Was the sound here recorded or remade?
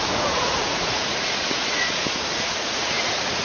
remade